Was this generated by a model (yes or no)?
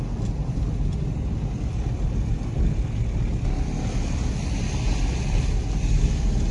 no